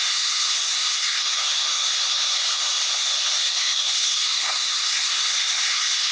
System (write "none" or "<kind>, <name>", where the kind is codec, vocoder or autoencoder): codec, SNAC